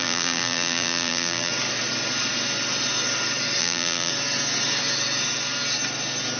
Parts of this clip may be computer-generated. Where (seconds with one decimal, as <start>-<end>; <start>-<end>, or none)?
0.0-1.5; 3.6-4.1